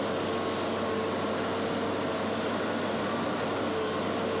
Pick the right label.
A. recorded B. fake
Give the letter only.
A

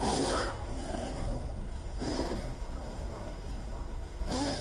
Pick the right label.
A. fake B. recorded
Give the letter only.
A